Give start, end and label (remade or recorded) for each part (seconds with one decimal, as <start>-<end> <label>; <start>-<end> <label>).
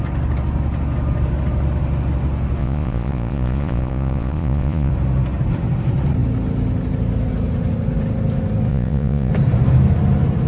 0.0-2.6 recorded; 2.6-4.9 remade; 4.9-8.7 recorded; 8.7-9.3 remade; 9.3-10.5 recorded